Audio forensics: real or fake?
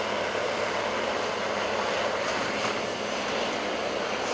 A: real